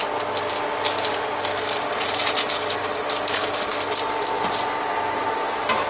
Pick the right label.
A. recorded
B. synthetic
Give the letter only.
A